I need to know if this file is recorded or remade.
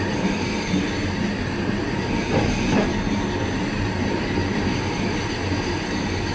recorded